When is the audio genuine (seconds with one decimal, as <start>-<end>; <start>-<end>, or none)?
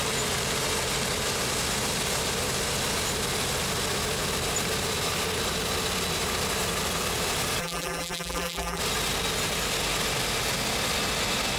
0.0-7.6; 8.8-11.6